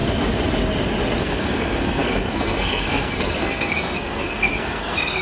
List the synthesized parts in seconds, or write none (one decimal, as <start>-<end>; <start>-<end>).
1.2-5.2